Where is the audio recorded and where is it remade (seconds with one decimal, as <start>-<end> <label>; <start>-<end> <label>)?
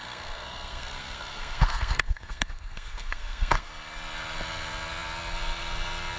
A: 0.0-3.7 remade; 3.7-6.2 recorded